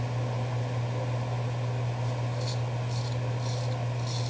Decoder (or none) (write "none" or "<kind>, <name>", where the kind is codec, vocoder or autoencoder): none